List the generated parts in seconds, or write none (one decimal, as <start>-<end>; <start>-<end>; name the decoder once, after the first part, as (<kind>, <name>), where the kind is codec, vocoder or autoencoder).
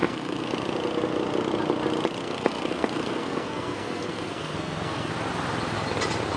0.0-0.5 (codec, SNAC); 2.2-5.1